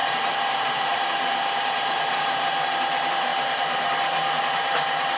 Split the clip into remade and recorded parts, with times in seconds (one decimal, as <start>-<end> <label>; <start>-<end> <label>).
0.0-5.2 remade